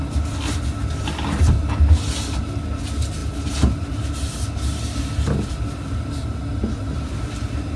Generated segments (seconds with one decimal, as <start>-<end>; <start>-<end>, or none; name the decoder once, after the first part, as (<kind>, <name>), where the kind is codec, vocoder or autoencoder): none